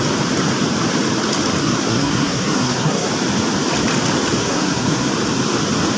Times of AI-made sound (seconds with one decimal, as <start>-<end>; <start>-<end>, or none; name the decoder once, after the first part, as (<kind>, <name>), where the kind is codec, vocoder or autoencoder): 1.6-3.1 (codec, SNAC); 4.4-5.1

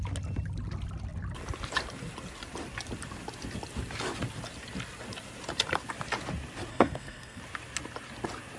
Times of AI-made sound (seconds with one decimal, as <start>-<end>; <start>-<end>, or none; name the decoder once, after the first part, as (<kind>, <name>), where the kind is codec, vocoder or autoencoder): 6.7-7.4 (codec, SNAC)

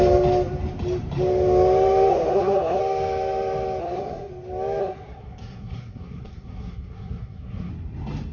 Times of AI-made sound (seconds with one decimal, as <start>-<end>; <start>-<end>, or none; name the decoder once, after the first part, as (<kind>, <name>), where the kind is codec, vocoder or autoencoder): 2.1-2.8 (codec, SNAC); 3.8-4.3; 4.8-7.7

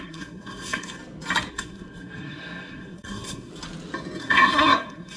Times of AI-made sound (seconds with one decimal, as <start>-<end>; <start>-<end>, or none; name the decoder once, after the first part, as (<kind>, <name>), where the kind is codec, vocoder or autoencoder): 0.0-1.0 (codec, SNAC); 1.5-3.5; 4.2-5.2

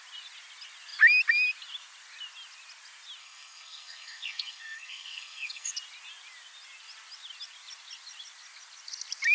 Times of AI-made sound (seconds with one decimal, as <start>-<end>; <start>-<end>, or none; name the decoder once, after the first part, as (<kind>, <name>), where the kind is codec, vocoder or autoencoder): 3.2-5.7 (codec, SNAC)

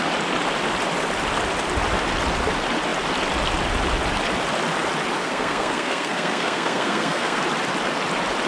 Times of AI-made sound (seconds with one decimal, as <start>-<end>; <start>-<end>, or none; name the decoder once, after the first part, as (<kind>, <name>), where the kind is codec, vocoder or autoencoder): 5.2-7.4 (codec, SNAC)